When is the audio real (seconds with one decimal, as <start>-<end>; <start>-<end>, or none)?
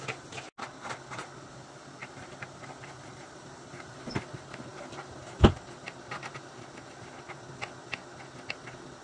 0.0-2.0; 6.1-9.0